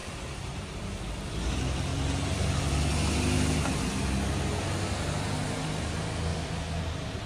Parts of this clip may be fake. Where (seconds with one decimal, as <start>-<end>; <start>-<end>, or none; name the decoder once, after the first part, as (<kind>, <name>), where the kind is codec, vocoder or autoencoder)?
0.0-1.5 (vocoder, BigVGAN v2); 1.9-2.7; 6.3-6.8